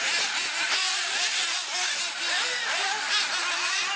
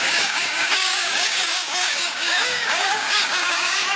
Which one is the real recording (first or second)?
first